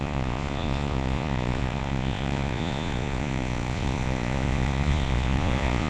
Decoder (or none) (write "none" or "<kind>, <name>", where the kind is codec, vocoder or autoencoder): vocoder, Vocos